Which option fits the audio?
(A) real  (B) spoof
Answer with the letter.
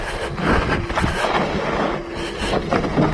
A